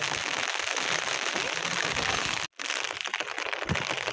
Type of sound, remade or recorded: recorded